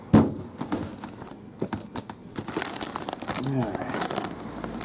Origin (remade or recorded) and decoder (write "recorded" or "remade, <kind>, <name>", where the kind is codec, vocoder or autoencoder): recorded